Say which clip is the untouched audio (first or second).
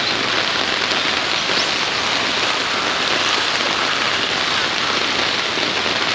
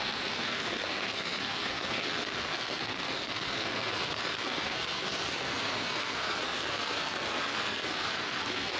first